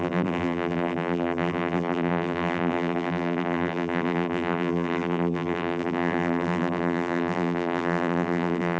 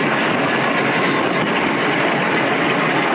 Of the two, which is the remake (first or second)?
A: first